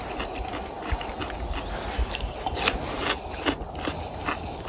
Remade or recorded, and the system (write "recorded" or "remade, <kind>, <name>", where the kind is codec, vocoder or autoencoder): recorded